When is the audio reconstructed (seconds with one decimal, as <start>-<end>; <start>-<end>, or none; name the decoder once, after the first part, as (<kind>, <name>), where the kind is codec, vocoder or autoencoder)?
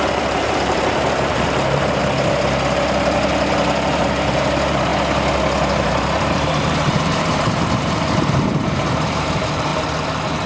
0.0-2.0 (vocoder, BigVGAN v2); 3.9-4.9; 5.8-9.7